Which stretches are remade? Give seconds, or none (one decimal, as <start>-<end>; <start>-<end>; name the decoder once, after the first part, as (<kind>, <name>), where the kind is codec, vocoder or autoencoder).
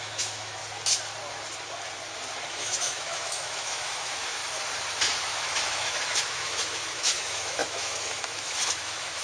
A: 0.0-0.6 (autoencoder, DAC-VAE); 2.5-4.4; 5.2-9.2